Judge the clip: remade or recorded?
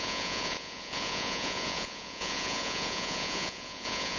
remade